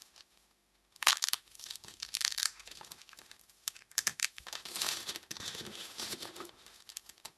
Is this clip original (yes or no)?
no